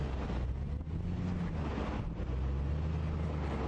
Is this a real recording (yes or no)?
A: yes